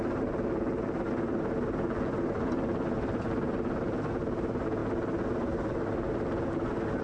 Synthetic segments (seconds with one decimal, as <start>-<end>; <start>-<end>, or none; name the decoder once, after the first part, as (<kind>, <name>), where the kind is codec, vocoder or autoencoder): none